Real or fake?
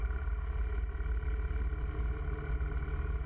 real